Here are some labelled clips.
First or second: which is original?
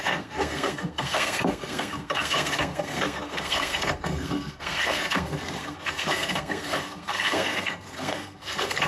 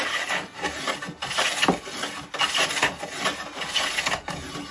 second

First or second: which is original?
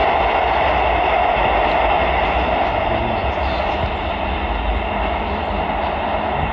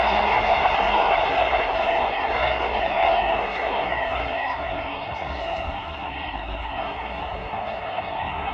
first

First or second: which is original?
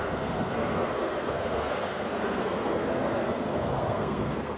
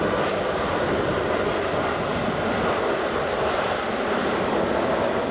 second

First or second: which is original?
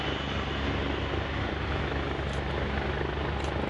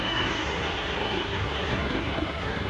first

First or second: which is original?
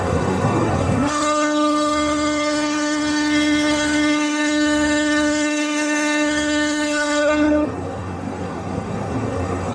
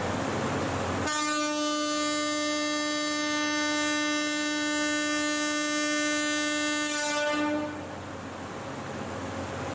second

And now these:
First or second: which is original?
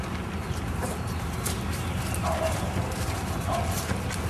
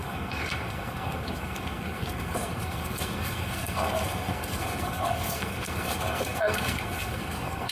first